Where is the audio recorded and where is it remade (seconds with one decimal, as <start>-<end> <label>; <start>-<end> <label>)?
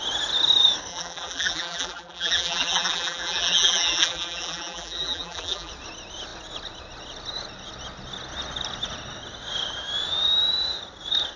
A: 0.0-0.9 recorded; 0.9-5.7 remade; 5.7-11.4 recorded